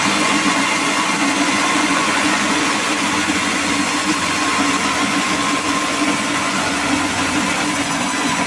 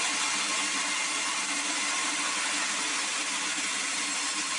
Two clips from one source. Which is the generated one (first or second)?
first